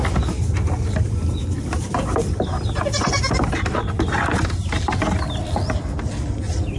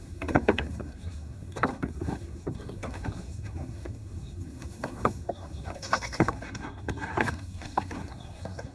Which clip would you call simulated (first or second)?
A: second